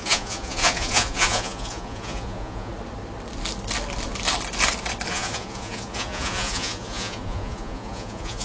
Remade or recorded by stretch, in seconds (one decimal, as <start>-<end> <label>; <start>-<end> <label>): 0.0-2.7 remade; 2.7-5.1 recorded; 5.1-8.4 remade